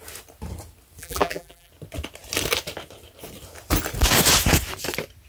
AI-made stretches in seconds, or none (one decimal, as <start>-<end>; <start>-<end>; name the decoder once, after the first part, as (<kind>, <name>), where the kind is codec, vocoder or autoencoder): 1.0-1.7 (vocoder, BigVGAN v2)

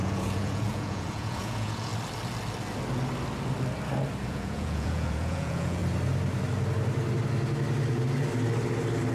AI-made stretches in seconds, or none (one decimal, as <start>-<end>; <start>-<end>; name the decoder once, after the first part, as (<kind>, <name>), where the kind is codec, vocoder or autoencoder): 0.0-1.9 (vocoder, Vocos); 4.2-5.8

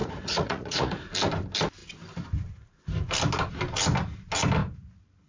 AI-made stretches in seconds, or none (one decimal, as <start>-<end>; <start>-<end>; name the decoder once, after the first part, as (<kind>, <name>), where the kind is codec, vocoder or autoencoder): 0.0-1.0 (vocoder, Vocos)